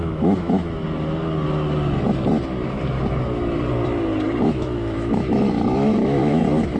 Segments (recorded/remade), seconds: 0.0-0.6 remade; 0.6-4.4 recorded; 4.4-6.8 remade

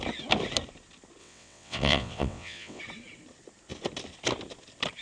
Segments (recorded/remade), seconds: 0.0-1.2 recorded; 1.2-2.8 remade; 2.8-5.0 recorded